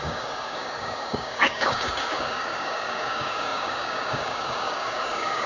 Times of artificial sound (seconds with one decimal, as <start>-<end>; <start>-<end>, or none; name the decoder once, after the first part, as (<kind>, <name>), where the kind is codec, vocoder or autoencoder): 0.0-5.5 (codec, DAC)